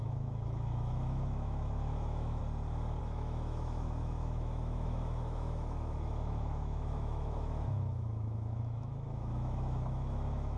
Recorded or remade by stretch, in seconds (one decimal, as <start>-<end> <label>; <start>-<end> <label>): 0.0-2.4 remade; 2.4-3.0 recorded; 3.0-10.6 remade